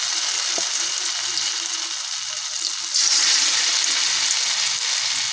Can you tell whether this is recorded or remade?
recorded